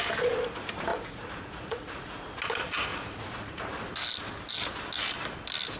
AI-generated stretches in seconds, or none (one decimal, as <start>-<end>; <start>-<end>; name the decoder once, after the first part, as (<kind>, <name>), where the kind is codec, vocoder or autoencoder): 0.9-2.4 (vocoder, Vocos); 2.9-3.7